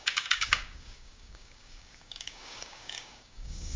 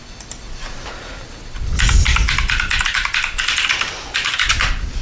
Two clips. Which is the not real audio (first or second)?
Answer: first